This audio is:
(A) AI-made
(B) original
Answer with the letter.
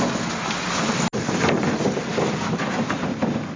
B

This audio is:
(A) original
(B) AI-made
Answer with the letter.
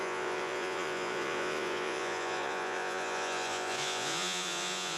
B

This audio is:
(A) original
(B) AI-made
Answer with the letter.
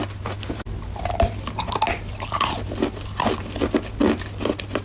A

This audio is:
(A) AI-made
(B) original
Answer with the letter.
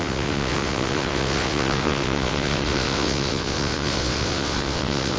A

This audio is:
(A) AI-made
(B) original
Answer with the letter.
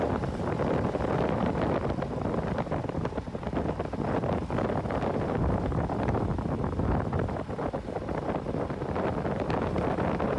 B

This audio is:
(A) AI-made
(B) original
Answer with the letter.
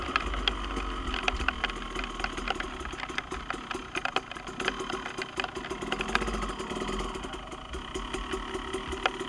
B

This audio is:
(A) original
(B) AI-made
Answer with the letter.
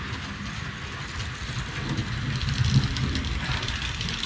A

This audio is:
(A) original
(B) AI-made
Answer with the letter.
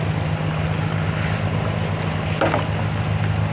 A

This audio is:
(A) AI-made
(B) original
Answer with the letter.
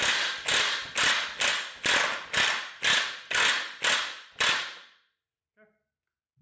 B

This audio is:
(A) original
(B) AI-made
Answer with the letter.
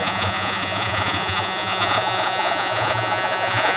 B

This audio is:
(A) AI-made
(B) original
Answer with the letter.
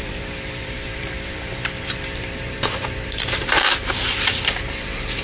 A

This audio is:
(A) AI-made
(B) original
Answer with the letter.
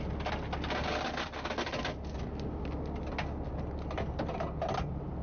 B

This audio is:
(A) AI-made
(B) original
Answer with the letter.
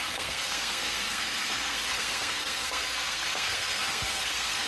A